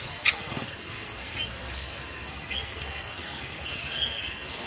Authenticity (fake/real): fake